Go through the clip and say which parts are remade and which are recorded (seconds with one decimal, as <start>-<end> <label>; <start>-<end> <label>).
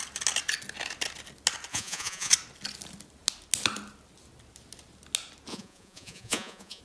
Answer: 0.0-1.7 recorded; 1.7-2.3 remade; 2.3-5.5 recorded; 5.5-6.8 remade